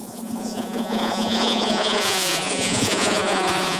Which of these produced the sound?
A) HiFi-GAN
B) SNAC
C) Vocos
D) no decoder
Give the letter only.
C